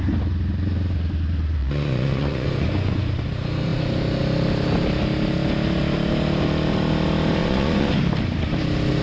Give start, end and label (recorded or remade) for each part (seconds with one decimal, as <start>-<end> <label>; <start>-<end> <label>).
0.0-1.6 recorded; 1.6-3.0 remade; 3.0-7.4 recorded; 7.4-8.0 remade; 8.0-9.0 recorded